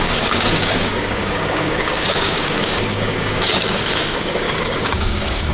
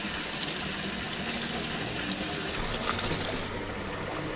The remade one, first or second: first